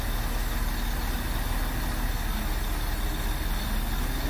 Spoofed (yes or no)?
no